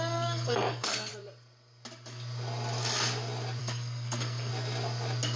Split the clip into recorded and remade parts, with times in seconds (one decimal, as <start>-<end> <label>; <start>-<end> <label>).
0.0-1.1 remade; 1.1-3.6 recorded; 3.6-4.5 remade; 4.5-5.4 recorded